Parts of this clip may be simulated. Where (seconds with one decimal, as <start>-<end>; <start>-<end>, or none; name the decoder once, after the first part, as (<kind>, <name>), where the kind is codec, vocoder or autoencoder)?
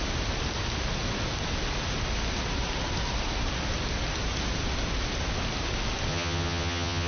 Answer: 6.1-7.1 (vocoder, HiFi-GAN)